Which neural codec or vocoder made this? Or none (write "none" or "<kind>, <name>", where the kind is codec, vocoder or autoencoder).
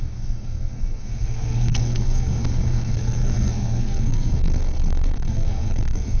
codec, SNAC